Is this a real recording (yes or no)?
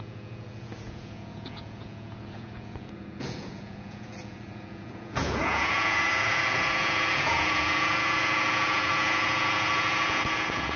no